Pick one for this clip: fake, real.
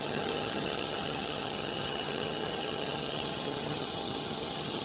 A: fake